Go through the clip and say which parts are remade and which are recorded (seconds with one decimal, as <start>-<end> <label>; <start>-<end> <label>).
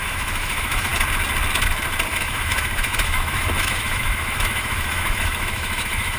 0.0-0.9 remade; 0.9-2.1 recorded; 2.1-6.2 remade